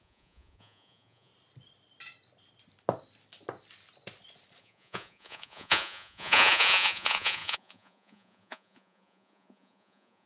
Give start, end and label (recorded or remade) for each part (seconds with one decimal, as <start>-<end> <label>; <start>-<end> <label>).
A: 0.0-1.3 remade; 1.3-4.6 recorded; 4.6-10.3 remade